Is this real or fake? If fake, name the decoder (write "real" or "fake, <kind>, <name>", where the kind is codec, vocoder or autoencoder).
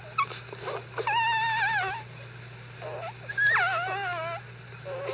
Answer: real